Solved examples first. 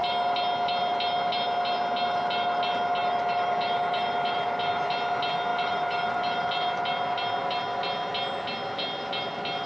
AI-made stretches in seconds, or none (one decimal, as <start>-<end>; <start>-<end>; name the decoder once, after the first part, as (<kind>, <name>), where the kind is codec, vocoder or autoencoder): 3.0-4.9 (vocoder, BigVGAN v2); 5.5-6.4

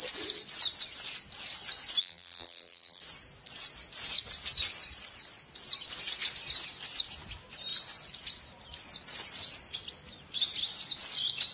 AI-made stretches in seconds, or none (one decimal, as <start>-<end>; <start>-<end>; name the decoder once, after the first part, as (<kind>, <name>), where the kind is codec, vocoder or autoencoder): 2.0-3.0 (vocoder, BigVGAN v2)

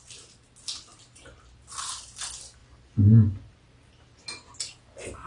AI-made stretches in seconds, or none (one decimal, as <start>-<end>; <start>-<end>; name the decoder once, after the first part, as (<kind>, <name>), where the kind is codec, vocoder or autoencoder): none

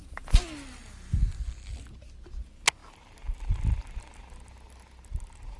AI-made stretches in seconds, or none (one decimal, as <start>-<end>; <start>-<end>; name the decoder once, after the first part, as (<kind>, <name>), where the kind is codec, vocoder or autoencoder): 0.0-0.5 (vocoder, BigVGAN v2)